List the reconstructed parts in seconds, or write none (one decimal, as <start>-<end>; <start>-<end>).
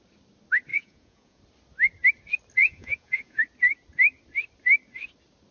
0.7-1.4; 2.6-3.4